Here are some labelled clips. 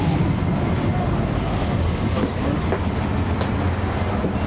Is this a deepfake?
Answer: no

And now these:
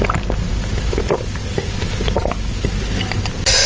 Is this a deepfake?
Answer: no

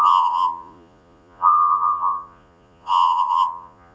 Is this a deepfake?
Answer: yes